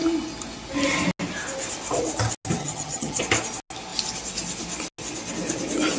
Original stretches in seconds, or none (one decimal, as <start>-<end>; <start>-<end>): 0.0-2.6; 3.2-6.0